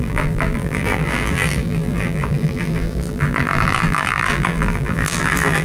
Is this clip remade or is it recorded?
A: remade